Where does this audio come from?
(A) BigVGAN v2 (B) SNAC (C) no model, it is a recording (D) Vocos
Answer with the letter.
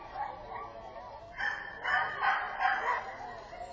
C